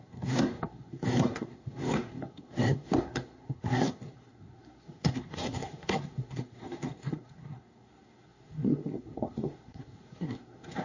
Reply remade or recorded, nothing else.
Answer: remade